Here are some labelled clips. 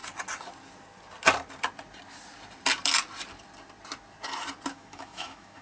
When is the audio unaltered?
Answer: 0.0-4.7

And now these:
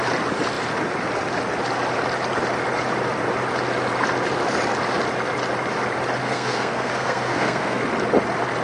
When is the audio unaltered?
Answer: 0.0-6.2; 7.8-8.6

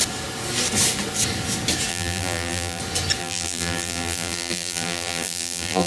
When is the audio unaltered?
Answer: 0.0-1.9; 2.8-3.2

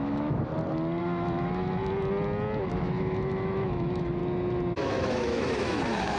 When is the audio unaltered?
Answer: 0.5-1.0; 1.8-2.6; 4.2-4.8

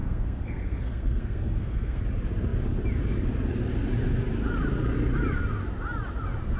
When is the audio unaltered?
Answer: 2.0-6.6

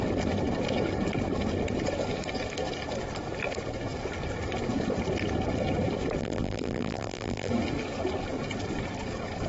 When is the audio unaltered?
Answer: 0.0-6.2; 7.5-9.5

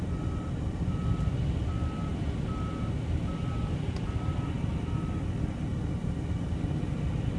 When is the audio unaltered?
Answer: 0.0-7.4

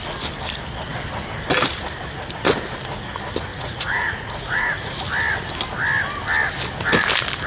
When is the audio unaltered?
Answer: 0.0-3.5; 5.0-7.5